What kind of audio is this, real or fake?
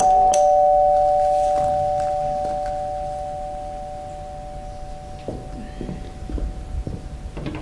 real